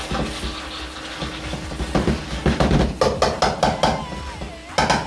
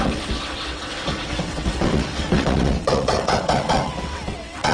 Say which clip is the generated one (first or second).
second